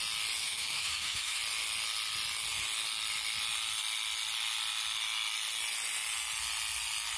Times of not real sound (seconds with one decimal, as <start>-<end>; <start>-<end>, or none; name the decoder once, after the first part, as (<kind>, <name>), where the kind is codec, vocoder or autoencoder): 0.4-1.4 (autoencoder, DAC-VAE)